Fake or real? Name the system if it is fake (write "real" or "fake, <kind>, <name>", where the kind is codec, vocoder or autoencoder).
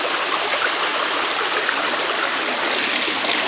real